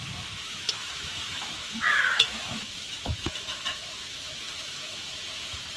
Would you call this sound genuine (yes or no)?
no